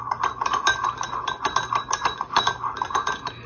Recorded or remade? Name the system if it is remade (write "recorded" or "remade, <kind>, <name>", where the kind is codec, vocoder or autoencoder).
recorded